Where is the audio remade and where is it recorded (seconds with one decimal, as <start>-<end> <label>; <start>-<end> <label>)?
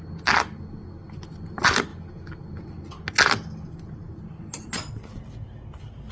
0.0-6.1 recorded